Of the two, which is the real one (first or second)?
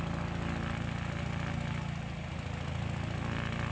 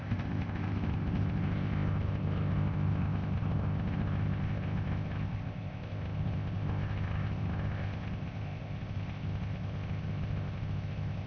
first